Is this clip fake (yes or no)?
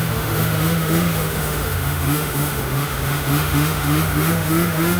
yes